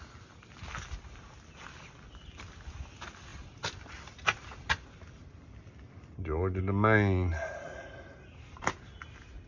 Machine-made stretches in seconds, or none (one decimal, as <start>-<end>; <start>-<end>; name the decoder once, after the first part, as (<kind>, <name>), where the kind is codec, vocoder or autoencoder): none